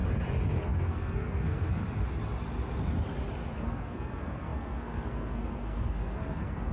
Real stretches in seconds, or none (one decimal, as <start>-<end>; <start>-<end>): 0.0-0.6; 1.8-3.6